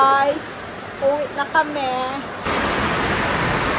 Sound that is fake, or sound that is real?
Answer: real